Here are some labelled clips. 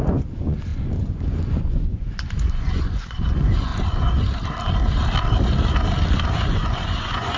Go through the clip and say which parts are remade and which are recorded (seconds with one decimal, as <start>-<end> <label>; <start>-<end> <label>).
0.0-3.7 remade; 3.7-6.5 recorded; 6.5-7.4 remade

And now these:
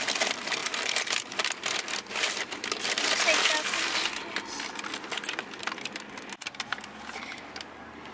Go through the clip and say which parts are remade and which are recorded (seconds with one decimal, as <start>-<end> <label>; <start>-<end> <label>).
0.0-0.6 recorded; 0.6-1.5 remade; 1.5-8.1 recorded

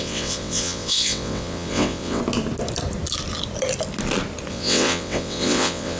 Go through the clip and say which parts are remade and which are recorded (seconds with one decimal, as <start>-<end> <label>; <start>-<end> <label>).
0.0-2.2 remade; 2.2-4.5 recorded; 4.5-6.0 remade

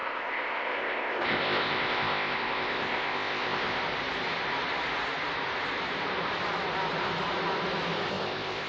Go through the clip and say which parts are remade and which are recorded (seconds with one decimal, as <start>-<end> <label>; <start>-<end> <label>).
0.0-3.8 remade; 3.8-8.1 recorded; 8.1-8.7 remade

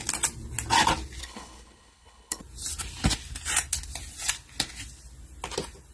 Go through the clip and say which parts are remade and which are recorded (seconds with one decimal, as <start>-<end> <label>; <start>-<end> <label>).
0.0-1.2 recorded; 1.2-2.4 remade; 2.4-5.9 recorded

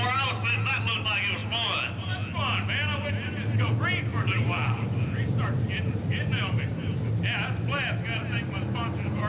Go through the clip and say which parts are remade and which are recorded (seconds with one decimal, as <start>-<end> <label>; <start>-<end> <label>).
0.0-4.1 recorded; 4.1-7.1 remade; 7.1-9.3 recorded